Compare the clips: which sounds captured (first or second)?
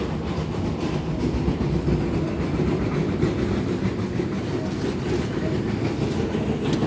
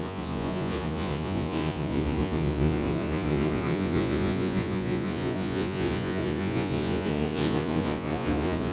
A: first